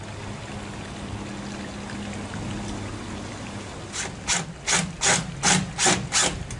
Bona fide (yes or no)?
yes